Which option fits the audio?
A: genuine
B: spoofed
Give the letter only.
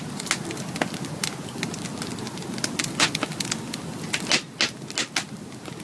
A